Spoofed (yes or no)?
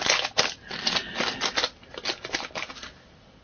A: no